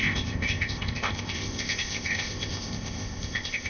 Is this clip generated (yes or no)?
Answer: yes